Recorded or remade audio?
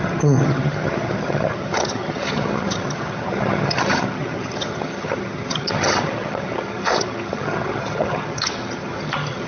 remade